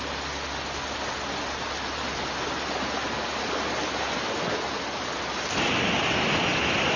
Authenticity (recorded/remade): recorded